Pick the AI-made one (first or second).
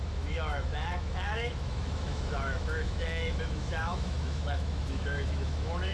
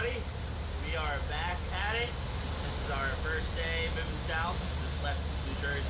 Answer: first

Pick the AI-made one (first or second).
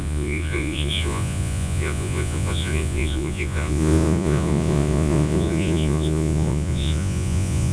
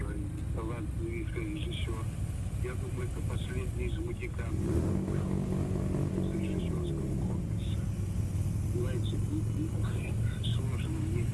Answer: first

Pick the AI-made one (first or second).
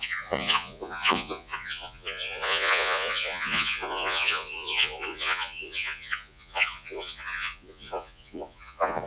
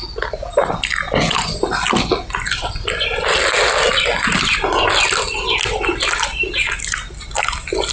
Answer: first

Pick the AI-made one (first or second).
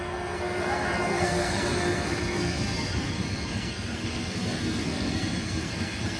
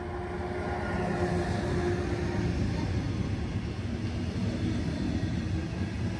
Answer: first